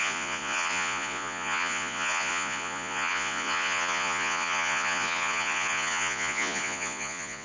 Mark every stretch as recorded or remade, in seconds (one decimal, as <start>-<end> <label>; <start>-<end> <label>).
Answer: 0.0-7.4 remade